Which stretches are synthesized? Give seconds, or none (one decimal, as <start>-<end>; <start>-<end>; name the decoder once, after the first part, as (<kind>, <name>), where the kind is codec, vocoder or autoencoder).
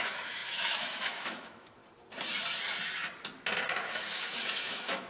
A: 0.0-1.8 (autoencoder, DAC-VAE); 3.9-5.1